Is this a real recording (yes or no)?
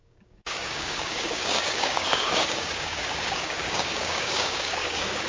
no